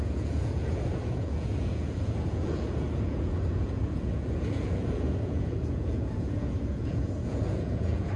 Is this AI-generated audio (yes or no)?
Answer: yes